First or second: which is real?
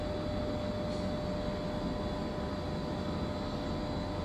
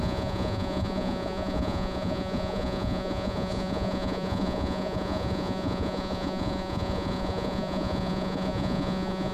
first